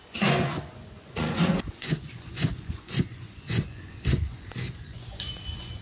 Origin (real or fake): fake